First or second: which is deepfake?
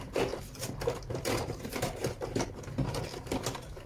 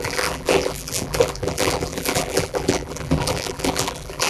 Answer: second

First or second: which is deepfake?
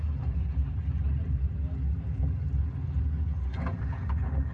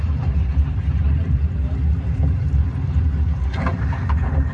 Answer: second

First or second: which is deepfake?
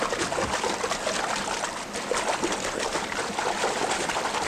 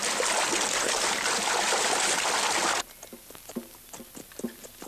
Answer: first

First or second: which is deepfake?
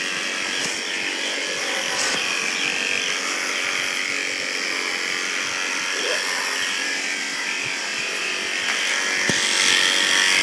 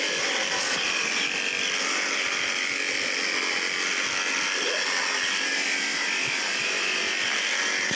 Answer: second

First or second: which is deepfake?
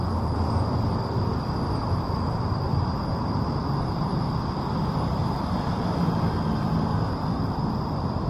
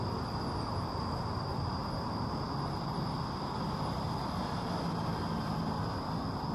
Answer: first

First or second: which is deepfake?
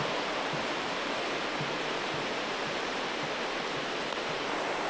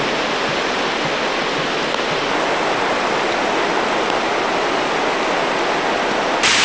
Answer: first